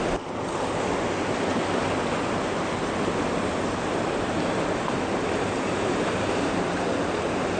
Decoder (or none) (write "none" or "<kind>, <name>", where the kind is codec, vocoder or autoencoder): none